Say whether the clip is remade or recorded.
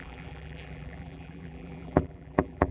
remade